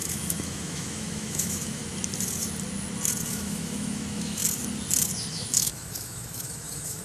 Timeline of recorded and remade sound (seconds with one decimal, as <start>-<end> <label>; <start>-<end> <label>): 0.0-1.8 remade; 1.8-3.3 recorded; 3.3-4.4 remade; 4.4-5.3 recorded; 5.3-7.0 remade